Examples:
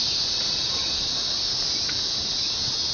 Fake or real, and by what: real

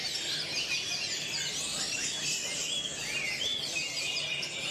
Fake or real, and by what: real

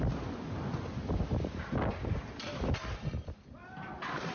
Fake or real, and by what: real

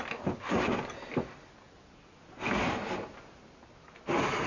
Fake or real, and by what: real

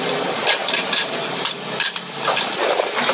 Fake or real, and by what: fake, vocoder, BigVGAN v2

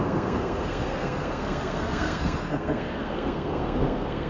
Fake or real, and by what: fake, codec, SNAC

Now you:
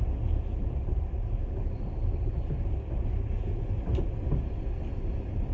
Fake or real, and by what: real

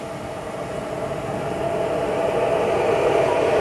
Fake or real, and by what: real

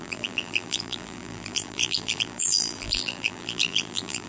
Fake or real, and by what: fake, vocoder, BigVGAN v2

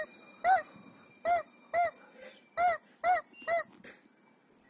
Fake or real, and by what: real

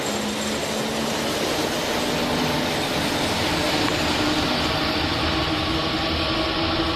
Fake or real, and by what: real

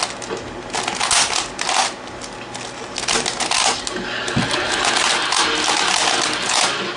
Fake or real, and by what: real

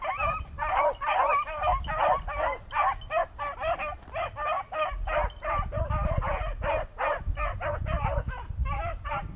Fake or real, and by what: real